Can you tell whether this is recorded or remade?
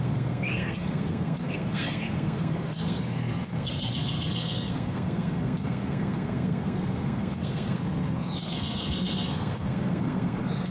remade